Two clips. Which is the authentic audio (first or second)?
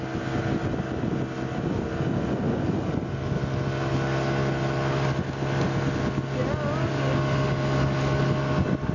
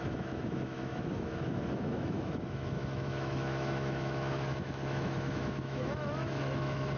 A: first